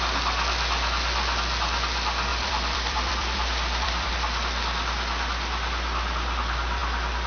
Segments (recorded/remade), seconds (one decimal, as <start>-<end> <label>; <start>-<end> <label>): 0.0-2.3 recorded; 2.3-4.1 remade; 4.1-7.3 recorded